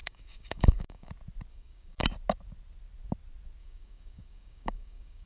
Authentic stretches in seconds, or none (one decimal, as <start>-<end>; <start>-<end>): 1.1-1.5; 2.0-3.6